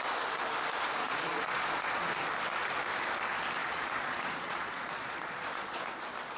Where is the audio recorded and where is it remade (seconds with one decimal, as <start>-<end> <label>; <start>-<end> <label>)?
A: 0.0-1.0 recorded; 1.0-2.1 remade; 2.1-3.6 recorded; 3.6-5.8 remade; 5.8-6.4 recorded